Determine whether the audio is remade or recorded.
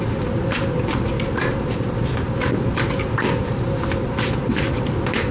recorded